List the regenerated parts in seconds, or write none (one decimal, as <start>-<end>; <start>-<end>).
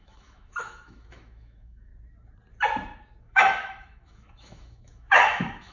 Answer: 0.0-1.9; 3.2-5.7